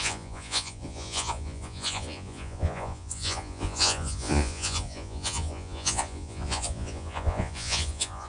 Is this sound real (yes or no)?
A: no